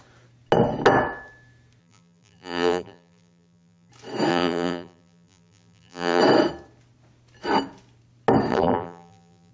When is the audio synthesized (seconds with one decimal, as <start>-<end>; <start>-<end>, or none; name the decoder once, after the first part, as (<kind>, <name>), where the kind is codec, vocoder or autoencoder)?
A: 1.8-3.9 (vocoder, BigVGAN v2); 4.3-6.2; 8.5-9.5